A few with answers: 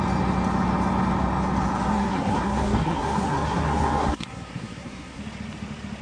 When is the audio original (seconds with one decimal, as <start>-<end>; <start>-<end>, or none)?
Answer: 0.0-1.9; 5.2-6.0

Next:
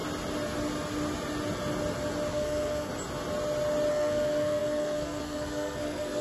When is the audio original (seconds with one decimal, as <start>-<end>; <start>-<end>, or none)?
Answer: 0.0-2.3; 2.9-3.9

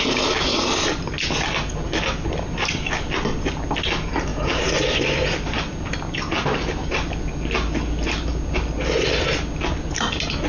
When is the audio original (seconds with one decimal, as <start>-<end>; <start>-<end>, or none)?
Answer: 0.0-10.5

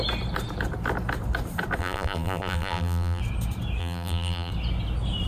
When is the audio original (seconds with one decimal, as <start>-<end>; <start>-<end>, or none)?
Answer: 0.0-1.8; 3.2-3.8; 4.5-5.3

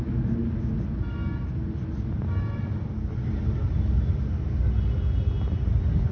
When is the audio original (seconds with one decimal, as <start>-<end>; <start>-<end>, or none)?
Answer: 0.0-6.1

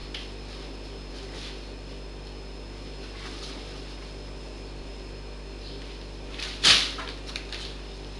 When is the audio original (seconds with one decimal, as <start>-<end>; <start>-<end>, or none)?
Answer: 0.0-8.2